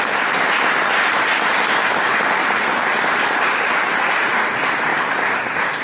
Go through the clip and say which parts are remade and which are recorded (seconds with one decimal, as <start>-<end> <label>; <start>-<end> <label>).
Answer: 0.0-2.4 recorded; 2.4-3.9 remade; 3.9-4.9 recorded; 4.9-5.8 remade

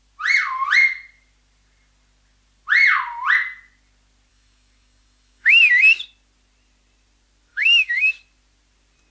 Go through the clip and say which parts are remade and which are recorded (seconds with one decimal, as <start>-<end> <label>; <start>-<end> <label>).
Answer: 0.0-4.3 recorded; 4.3-5.6 remade; 5.6-7.5 recorded; 7.5-8.1 remade; 8.1-9.1 recorded